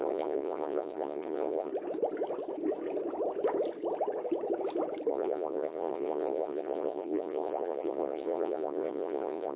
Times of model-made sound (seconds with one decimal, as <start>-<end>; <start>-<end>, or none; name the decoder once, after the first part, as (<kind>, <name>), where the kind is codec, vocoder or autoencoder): 0.0-1.7 (vocoder, Vocos); 5.1-9.6